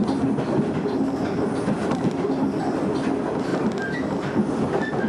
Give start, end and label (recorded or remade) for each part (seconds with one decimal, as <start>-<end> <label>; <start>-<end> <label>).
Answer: 0.0-5.1 recorded